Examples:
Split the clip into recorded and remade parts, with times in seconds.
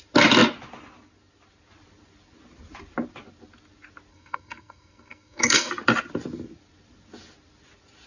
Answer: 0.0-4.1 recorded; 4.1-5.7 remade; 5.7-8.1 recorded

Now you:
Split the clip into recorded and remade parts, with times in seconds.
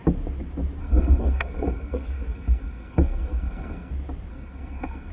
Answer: 0.0-0.8 recorded; 0.8-3.9 remade; 3.9-4.3 recorded; 4.3-5.1 remade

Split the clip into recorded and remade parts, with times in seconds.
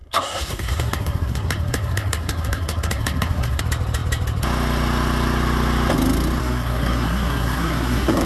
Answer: 0.0-3.6 remade; 3.6-6.4 recorded; 6.4-8.3 remade